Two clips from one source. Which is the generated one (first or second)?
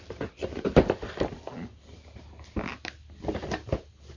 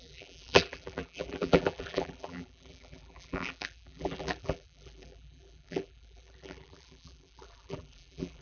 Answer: second